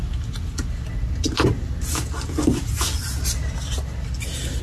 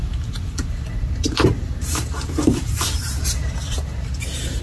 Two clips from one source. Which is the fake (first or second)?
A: second